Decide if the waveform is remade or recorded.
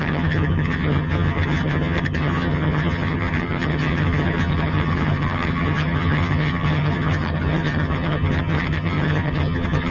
remade